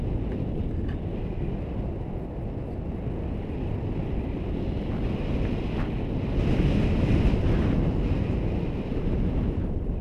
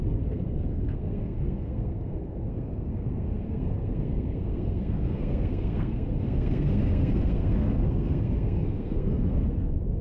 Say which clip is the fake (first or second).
second